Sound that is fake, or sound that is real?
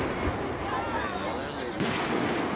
real